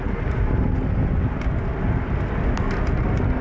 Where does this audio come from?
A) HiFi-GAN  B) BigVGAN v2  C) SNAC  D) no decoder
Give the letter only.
D